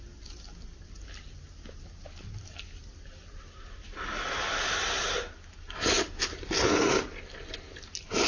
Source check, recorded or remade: recorded